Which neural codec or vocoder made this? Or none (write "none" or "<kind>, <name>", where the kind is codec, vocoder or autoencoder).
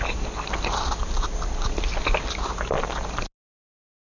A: none